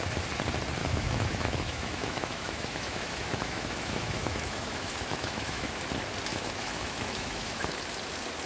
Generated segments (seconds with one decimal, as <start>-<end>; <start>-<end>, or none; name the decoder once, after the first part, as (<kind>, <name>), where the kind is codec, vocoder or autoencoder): 0.8-5.7 (autoencoder, DAC-VAE); 6.3-7.8

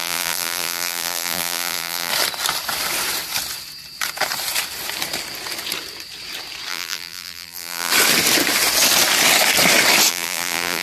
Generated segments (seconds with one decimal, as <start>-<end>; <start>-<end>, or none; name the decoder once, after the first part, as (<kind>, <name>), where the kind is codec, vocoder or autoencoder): 0.0-2.1 (vocoder, BigVGAN v2); 6.7-7.9; 10.1-10.8

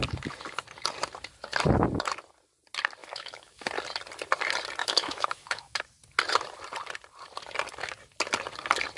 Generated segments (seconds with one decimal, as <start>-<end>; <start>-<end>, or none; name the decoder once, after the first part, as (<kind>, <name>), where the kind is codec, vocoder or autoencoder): 3.0-3.7 (autoencoder, DAC-VAE); 4.8-5.8

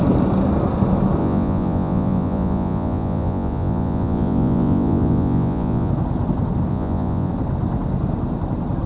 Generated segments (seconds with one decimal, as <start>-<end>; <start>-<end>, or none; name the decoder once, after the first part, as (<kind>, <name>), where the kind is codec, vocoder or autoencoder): 1.2-5.9 (vocoder, Vocos); 6.7-7.3

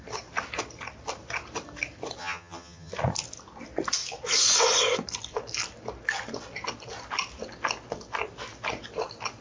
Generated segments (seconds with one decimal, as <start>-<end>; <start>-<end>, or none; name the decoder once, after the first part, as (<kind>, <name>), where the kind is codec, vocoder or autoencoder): 2.2-2.9 (vocoder, HiFi-GAN)

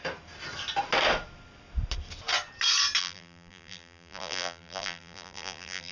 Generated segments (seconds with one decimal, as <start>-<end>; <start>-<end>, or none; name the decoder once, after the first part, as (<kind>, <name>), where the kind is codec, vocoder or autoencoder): 3.0-5.9 (vocoder, BigVGAN v2)

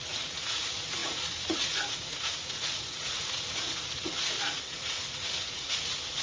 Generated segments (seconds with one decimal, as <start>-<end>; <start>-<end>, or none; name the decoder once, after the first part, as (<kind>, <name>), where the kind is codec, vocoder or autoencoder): 0.0-6.2 (vocoder, Vocos)

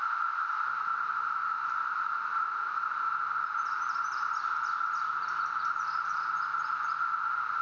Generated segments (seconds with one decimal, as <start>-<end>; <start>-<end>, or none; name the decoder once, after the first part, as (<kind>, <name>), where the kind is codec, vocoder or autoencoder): none